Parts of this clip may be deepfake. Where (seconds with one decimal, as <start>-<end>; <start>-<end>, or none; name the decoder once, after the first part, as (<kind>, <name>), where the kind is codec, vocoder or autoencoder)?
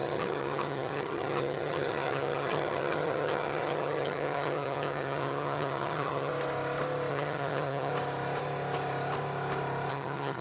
0.0-6.3 (vocoder, HiFi-GAN); 7.1-7.9; 9.9-10.4